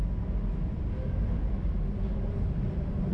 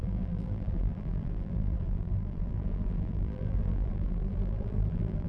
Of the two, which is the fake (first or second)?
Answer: second